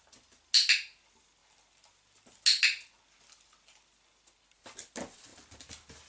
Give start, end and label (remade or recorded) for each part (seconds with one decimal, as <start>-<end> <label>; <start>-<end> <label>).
0.0-6.1 recorded